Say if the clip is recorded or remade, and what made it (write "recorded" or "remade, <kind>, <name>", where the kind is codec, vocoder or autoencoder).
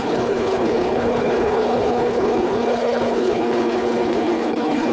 remade, codec, HILCodec